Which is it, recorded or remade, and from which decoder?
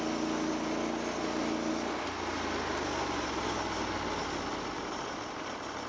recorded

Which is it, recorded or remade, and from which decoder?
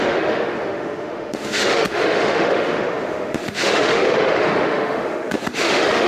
remade, autoencoder, DAC-VAE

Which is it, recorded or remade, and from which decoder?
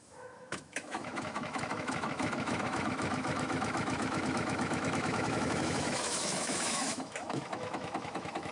remade, autoencoder, DAC-VAE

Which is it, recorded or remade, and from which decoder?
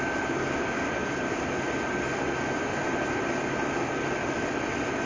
recorded